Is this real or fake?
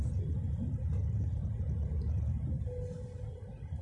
real